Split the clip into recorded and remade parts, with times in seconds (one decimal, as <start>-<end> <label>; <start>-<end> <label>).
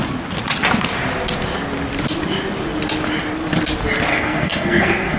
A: 0.0-4.1 recorded; 4.1-5.2 remade